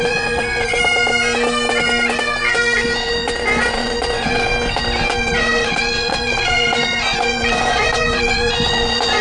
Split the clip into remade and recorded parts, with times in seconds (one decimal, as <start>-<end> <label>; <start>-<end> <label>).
0.0-0.7 remade; 0.7-2.2 recorded; 2.2-4.5 remade; 4.5-5.2 recorded; 5.2-9.2 remade